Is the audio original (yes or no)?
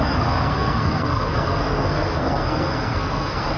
no